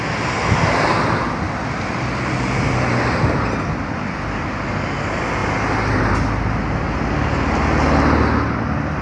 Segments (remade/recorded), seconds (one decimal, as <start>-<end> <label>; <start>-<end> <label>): 0.0-9.0 recorded